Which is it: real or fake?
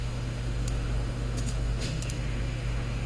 fake